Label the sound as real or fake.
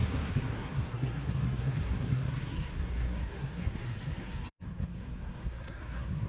fake